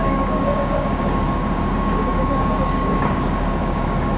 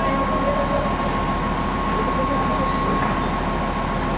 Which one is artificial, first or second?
first